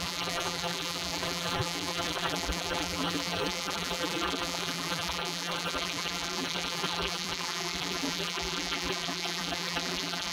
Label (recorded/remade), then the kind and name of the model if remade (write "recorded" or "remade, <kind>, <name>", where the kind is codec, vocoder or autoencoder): remade, vocoder, BigVGAN v2